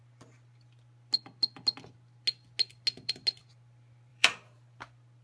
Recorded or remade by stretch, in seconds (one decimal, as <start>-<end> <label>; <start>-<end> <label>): 0.0-4.1 recorded; 4.1-4.8 remade; 4.8-5.2 recorded